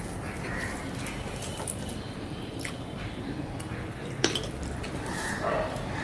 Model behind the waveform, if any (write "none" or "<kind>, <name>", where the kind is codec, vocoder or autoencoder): vocoder, BigVGAN v2